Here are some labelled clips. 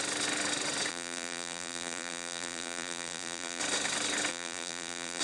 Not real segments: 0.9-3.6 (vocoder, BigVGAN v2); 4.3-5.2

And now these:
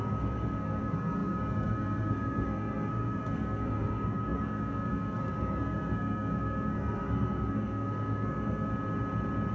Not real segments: 0.0-8.7 (codec, SNAC)

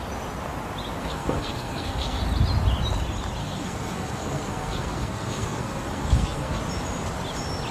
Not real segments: 1.0-2.2 (codec, SNAC); 3.4-6.6

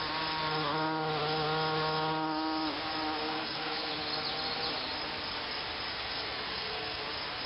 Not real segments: 3.2-3.9 (codec, SNAC); 5.9-7.0

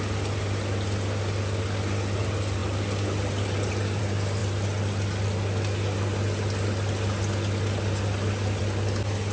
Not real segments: none

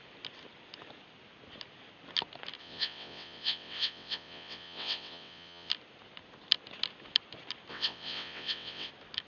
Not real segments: 2.6-5.7 (vocoder, WaveNeXt); 7.7-8.9

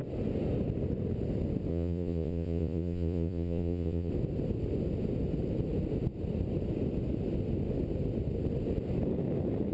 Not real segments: 1.7-4.1 (vocoder, Vocos)

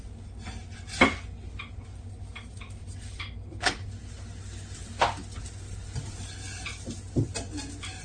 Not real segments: none